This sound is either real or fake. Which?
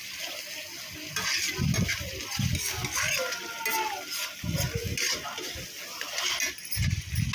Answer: real